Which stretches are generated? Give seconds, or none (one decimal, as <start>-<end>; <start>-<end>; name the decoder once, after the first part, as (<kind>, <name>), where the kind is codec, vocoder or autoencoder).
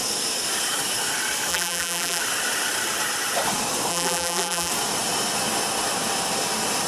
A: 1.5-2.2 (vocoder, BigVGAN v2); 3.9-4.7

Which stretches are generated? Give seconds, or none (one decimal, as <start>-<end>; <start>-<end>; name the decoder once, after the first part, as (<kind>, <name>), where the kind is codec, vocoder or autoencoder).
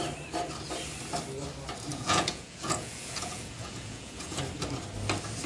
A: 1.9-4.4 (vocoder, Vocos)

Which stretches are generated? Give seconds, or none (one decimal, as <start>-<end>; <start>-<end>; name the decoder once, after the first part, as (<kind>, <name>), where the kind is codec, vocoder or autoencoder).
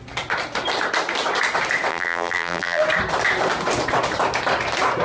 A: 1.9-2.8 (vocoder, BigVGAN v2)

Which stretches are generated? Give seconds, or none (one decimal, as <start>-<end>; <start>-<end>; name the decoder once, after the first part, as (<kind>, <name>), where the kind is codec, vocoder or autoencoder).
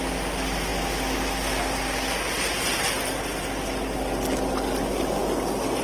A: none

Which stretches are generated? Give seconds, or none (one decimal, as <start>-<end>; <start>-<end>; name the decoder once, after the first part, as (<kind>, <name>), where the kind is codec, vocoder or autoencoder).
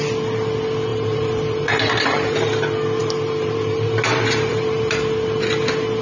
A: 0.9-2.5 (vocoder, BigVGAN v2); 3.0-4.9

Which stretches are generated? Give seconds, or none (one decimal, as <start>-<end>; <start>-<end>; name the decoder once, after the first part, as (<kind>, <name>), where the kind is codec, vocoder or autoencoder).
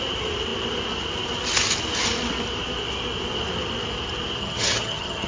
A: 4.4-5.3 (vocoder, HiFi-GAN)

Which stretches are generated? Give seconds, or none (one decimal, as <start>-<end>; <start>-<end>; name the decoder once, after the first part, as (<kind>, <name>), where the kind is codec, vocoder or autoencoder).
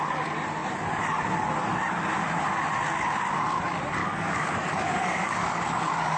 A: 4.0-6.2 (codec, DAC)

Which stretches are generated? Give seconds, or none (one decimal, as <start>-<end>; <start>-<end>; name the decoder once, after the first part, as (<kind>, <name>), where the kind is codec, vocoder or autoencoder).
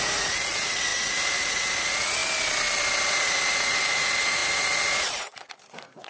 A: 0.0-2.2 (vocoder, Vocos); 3.1-6.1